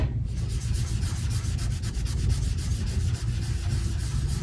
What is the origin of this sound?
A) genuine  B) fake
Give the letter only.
A